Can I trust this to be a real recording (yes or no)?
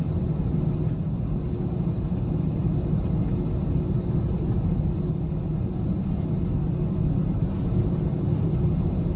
yes